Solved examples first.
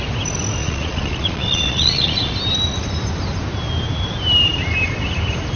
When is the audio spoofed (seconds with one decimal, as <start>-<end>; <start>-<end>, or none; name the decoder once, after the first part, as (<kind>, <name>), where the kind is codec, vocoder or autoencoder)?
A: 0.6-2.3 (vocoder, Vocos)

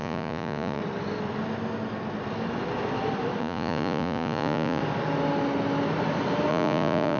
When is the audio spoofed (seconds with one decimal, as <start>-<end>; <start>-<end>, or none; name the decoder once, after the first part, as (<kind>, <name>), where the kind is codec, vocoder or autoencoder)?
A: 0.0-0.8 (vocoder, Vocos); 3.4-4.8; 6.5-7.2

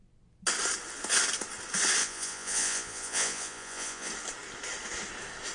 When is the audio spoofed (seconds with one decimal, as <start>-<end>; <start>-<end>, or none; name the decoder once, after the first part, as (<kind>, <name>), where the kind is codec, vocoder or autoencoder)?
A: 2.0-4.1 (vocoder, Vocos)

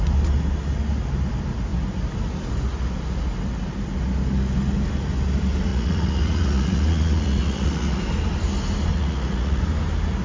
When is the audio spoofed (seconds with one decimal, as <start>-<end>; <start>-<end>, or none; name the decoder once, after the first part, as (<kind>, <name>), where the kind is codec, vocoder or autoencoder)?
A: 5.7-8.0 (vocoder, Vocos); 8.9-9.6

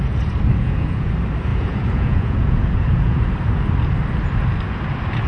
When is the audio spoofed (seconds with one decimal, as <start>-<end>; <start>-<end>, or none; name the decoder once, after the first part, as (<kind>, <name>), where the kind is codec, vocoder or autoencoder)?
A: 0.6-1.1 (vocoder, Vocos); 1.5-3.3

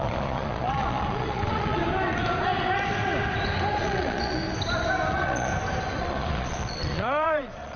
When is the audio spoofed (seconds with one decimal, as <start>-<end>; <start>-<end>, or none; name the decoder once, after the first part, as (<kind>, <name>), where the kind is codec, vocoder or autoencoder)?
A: 0.0-1.8 (vocoder, Vocos); 3.8-4.4; 5.1-5.5; 6.0-7.8